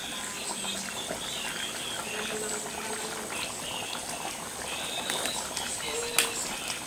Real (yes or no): yes